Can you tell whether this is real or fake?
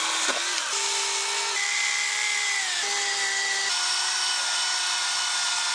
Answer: real